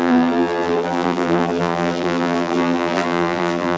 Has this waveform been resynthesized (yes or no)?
yes